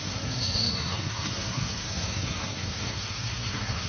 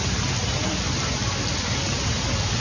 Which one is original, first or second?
second